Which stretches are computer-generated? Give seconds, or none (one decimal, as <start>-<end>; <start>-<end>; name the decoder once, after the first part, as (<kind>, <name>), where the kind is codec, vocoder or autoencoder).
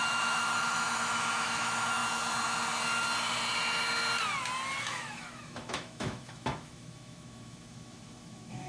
0.0-2.0 (autoencoder, DAC-VAE); 4.8-8.7